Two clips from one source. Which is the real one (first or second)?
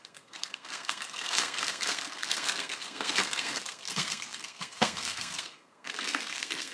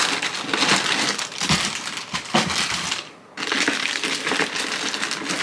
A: second